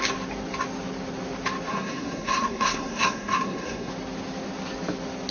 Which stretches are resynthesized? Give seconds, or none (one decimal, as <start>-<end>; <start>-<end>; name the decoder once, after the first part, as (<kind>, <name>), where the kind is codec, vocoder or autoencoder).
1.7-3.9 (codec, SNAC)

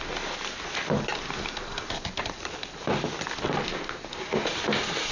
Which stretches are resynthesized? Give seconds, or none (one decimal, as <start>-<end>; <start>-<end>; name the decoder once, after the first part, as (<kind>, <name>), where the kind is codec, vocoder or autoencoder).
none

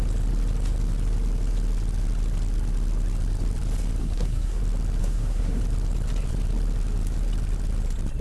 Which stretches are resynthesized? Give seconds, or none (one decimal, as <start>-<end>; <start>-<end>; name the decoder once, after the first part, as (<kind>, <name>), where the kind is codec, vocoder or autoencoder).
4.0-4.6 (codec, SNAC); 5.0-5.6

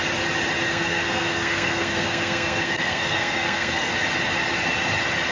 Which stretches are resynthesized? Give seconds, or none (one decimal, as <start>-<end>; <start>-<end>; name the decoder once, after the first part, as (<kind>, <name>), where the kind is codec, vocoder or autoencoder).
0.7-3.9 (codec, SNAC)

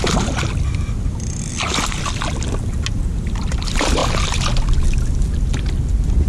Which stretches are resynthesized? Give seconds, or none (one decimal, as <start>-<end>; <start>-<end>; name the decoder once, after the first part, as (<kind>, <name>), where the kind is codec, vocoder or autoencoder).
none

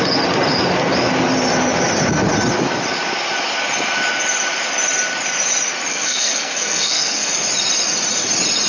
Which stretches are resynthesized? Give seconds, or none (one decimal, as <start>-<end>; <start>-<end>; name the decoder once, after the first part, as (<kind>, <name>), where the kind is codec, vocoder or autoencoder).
5.9-7.3 (codec, SNAC)

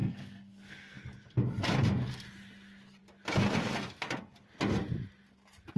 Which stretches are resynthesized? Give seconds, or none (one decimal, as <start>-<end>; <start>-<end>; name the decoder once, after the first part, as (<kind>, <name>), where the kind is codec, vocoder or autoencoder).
0.0-1.0 (codec, SNAC)